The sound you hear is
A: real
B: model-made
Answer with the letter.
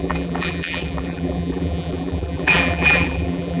B